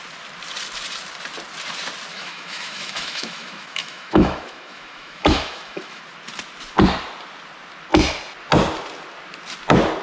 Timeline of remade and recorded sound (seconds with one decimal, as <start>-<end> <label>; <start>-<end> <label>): 0.0-2.1 recorded; 2.1-6.0 remade; 6.0-10.0 recorded